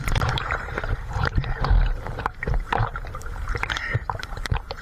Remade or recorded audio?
remade